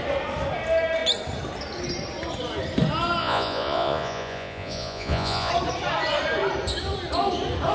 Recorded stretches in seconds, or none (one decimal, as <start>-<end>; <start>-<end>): 0.0-3.2; 5.5-7.7